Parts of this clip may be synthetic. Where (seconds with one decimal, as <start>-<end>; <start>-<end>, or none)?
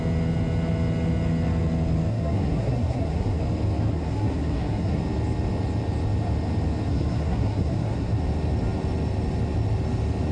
2.1-3.4; 3.9-5.0; 6.9-8.1